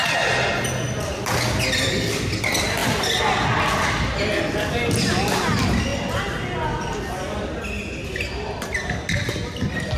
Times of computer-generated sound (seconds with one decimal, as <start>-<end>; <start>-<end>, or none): none